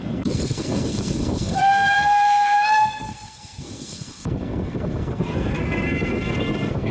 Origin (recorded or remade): remade